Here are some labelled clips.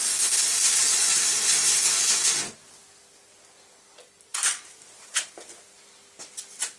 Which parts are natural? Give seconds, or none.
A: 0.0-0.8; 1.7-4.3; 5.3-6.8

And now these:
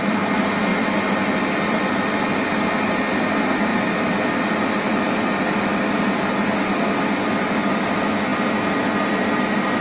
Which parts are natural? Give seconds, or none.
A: 0.0-0.7; 2.5-3.7; 5.9-9.8

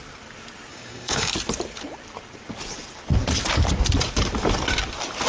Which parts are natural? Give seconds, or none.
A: 0.0-0.7; 1.3-5.3